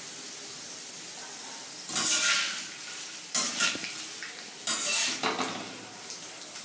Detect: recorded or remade recorded